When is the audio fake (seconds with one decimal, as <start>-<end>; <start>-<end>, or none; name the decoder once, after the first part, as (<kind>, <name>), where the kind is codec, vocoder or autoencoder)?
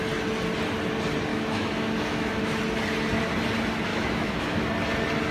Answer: 1.3-2.6 (autoencoder, DAC-VAE); 3.9-4.7